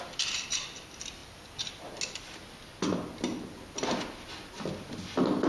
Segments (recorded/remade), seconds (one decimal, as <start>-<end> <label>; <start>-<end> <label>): 0.0-5.5 recorded